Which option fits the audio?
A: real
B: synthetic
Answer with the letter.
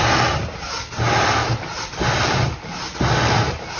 A